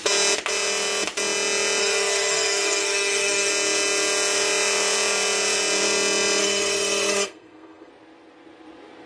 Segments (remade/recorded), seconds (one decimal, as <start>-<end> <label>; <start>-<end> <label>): 0.0-1.8 recorded; 1.8-3.5 remade; 3.5-6.4 recorded; 6.4-7.9 remade; 7.9-9.1 recorded